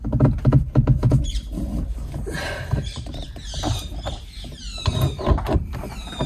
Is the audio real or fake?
fake